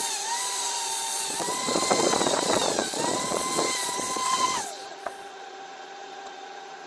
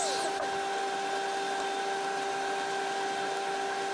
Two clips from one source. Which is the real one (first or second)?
second